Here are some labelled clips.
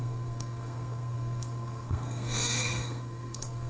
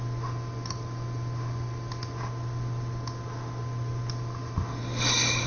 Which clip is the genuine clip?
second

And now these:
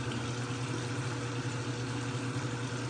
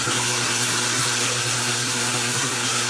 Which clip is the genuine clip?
first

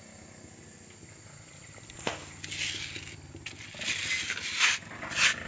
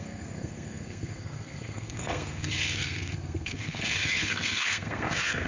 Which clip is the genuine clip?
first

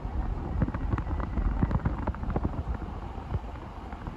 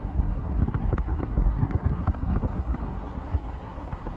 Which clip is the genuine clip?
first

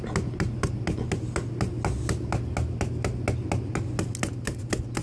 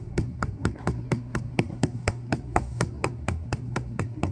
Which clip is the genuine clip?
first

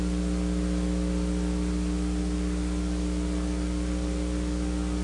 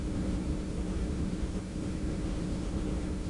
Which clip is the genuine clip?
first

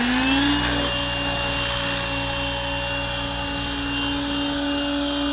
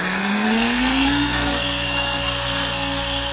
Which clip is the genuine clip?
first